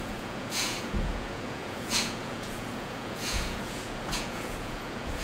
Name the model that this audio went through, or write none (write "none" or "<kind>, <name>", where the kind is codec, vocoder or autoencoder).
vocoder, Vocos